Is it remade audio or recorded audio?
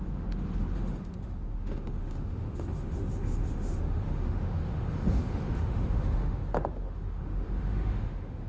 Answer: remade